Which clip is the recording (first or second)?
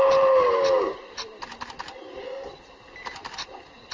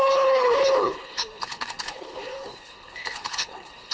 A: first